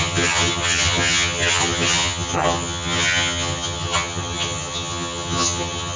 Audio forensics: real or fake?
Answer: fake